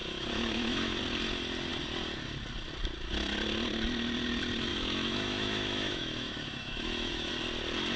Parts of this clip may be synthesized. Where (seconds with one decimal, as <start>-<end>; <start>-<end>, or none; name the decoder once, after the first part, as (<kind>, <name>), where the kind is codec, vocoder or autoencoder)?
0.0-1.0 (autoencoder, DAC-VAE); 4.7-7.3